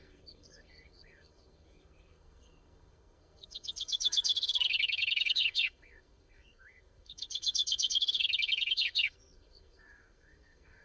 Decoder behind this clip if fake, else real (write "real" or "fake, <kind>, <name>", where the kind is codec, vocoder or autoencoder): fake, codec, SNAC